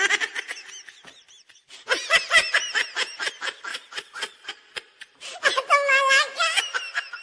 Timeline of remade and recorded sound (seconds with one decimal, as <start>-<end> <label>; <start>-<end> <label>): 0.0-3.7 recorded; 3.7-4.5 remade; 4.5-7.2 recorded